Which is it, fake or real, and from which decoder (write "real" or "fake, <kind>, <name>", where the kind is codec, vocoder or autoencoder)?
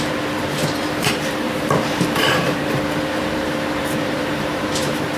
fake, vocoder, BigVGAN v2